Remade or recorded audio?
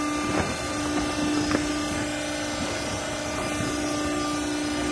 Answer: recorded